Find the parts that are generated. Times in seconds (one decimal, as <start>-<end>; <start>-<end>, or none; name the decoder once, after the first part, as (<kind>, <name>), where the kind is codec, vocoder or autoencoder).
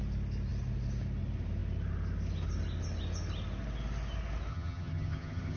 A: 4.5-5.6 (vocoder, HiFi-GAN)